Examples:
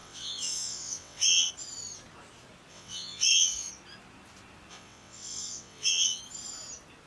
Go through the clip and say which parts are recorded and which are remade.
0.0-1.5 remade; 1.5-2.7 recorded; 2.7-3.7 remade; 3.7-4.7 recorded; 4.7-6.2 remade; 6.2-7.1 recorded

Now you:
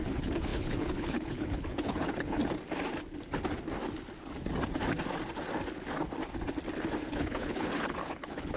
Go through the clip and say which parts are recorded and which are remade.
0.0-2.4 remade; 2.4-7.1 recorded; 7.1-8.6 remade

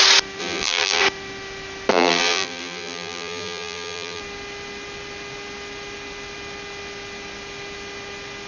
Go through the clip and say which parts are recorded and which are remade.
0.0-0.4 recorded; 0.4-1.0 remade; 1.0-1.9 recorded; 1.9-4.2 remade; 4.2-8.5 recorded

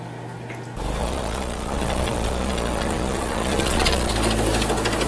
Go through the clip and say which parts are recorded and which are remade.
0.0-1.0 recorded; 1.0-4.1 remade; 4.1-5.1 recorded